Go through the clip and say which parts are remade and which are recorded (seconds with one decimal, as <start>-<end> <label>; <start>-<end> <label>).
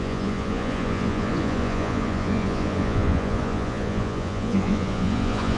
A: 0.0-5.6 remade